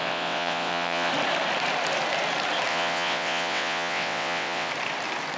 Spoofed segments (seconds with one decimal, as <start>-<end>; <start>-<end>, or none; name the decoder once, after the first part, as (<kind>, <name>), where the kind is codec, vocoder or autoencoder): 0.0-1.1 (vocoder, WaveNeXt); 2.7-4.7